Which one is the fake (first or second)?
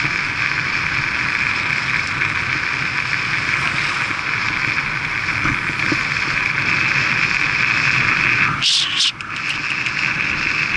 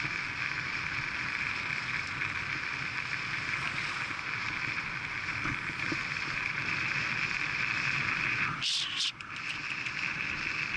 second